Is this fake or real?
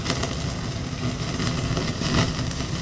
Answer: real